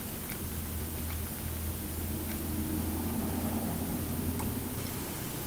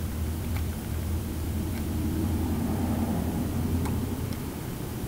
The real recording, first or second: first